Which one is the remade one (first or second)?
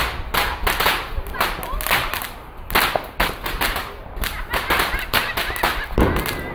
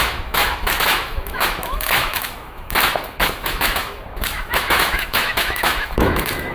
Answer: second